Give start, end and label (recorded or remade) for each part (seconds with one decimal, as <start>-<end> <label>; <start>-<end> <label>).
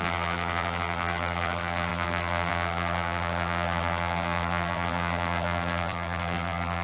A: 0.0-6.8 remade